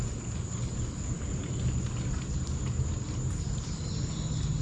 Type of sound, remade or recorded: recorded